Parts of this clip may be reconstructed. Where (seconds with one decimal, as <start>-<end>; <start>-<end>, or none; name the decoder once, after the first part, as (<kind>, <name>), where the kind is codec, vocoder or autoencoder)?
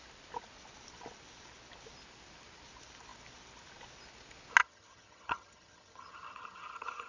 4.6-7.1 (vocoder, HiFi-GAN)